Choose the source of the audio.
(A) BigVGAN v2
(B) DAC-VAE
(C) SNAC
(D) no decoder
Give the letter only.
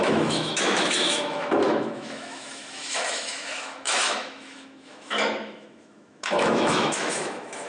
B